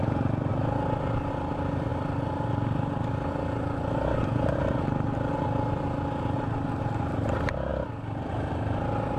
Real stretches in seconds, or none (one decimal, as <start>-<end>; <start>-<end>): 0.0-9.2